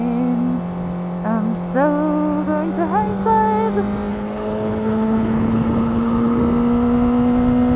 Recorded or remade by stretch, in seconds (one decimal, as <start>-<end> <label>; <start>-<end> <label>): 0.0-4.1 recorded; 4.1-6.4 remade; 6.4-7.8 recorded